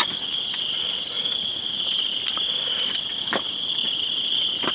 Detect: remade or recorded recorded